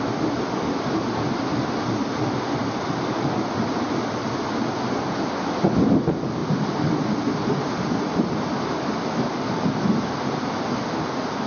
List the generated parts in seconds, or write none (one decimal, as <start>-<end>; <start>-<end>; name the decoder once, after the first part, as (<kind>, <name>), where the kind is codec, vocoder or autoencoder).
2.6-3.6 (vocoder, BigVGAN v2); 6.4-8.0